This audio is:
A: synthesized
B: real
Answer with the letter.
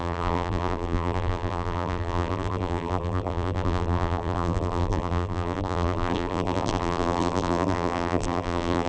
A